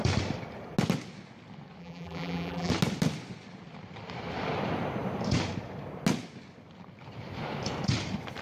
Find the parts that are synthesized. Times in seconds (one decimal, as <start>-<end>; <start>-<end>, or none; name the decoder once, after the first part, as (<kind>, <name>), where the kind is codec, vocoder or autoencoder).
1.8-2.7 (vocoder, BigVGAN v2)